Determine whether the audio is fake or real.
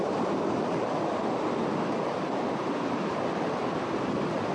real